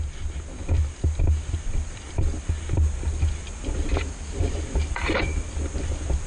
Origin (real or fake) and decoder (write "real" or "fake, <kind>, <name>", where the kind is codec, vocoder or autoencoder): real